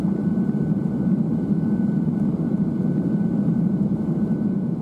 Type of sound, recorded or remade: remade